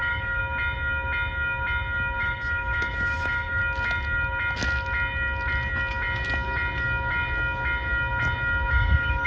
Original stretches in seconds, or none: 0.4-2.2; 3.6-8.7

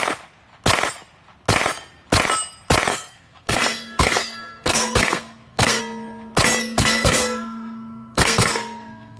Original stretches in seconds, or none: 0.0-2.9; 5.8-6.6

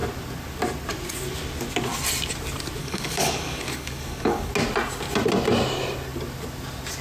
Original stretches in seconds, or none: 0.0-2.8; 4.5-7.0

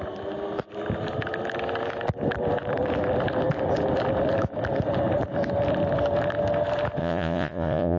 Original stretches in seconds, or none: 0.0-7.0